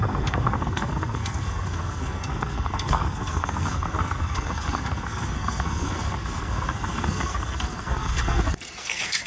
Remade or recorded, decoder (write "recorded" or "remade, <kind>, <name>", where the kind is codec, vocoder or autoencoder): remade, codec, SNAC